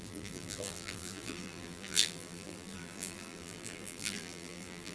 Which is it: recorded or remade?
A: remade